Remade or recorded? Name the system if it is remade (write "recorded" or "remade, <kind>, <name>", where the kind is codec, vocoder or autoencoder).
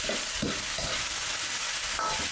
recorded